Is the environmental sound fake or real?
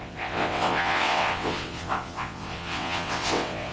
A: fake